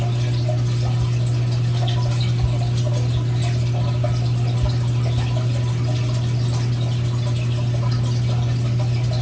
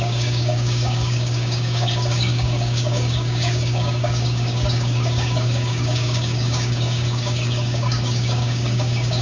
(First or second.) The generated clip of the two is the second